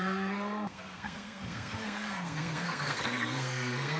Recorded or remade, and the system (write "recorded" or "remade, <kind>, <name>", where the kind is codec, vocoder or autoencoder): remade, codec, SNAC